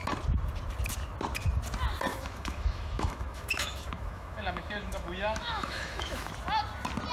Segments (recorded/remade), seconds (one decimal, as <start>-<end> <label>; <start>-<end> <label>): 0.0-2.1 recorded; 2.1-6.3 remade; 6.3-7.1 recorded